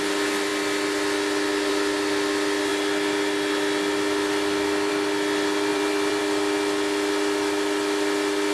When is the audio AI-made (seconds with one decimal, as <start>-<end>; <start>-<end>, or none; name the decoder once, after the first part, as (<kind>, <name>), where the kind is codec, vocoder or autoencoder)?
5.7-6.2 (vocoder, BigVGAN v2)